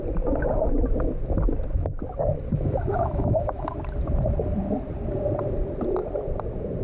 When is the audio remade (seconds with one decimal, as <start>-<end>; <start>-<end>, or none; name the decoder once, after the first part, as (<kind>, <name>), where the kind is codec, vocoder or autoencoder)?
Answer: 2.5-3.7 (autoencoder, DAC-VAE)